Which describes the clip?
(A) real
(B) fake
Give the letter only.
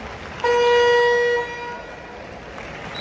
A